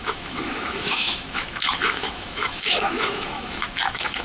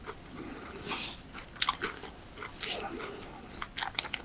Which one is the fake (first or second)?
first